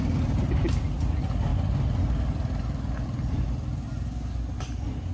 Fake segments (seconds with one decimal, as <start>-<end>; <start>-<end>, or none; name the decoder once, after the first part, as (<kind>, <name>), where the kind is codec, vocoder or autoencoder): none